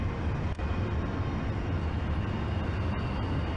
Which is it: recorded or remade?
recorded